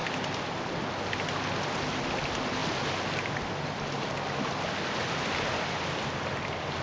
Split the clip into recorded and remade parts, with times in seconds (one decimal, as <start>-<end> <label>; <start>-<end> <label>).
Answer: 0.0-6.8 recorded